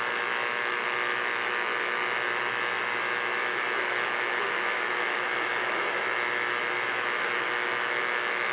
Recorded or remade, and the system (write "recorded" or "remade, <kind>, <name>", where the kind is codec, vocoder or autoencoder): remade, autoencoder, DAC-VAE